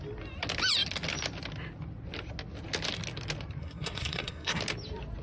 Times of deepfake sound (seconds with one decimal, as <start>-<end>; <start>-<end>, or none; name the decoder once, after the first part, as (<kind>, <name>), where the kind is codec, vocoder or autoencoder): 3.6-4.6 (codec, SNAC)